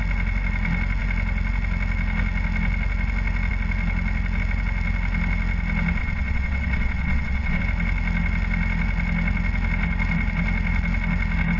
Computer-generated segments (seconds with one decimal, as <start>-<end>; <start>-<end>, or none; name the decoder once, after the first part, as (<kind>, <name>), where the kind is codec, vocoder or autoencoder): 6.0-7.6 (vocoder, WaveNeXt)